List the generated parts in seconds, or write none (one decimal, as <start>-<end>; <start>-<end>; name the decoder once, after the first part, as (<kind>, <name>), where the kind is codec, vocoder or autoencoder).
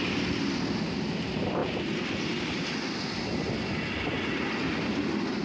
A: none